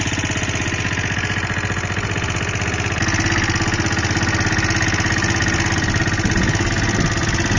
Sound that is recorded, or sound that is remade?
recorded